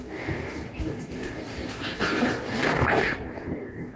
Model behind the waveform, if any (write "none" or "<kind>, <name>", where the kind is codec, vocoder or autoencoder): codec, DAC